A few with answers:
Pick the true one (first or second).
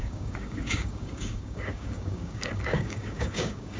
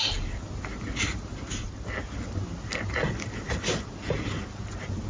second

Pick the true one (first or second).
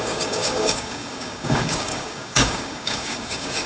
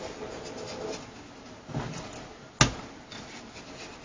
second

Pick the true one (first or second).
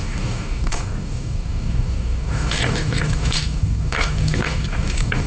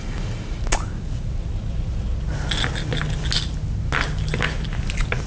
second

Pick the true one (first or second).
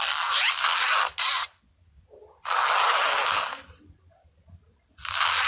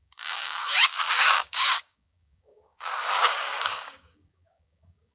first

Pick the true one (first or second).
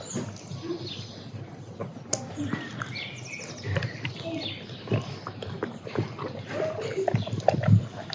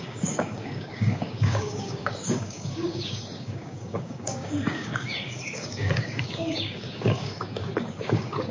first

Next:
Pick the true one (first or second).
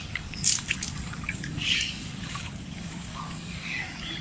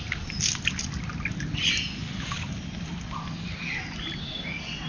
second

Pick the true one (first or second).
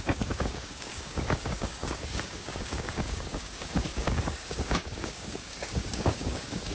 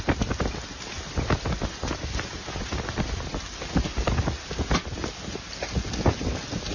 second